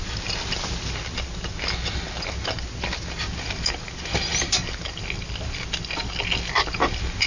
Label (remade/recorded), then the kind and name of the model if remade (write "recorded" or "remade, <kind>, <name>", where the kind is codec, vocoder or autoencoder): recorded